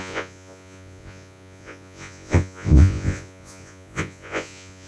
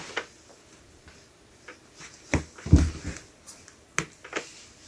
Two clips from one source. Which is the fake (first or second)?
first